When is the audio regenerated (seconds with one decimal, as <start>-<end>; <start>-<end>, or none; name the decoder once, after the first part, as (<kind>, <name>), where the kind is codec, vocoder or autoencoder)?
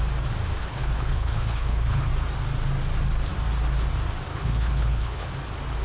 0.6-2.1 (codec, HILCodec); 4.3-5.3